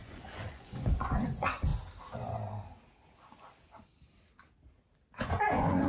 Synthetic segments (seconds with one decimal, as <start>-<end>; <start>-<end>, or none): 0.0-1.7; 5.2-5.9